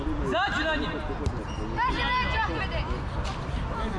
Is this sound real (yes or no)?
yes